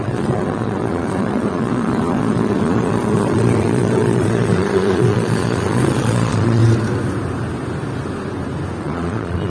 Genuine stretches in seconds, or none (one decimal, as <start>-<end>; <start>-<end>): 6.6-8.8